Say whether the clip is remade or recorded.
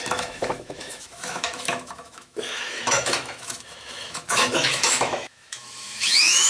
remade